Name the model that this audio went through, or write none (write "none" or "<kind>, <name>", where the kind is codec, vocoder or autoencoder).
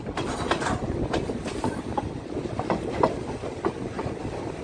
none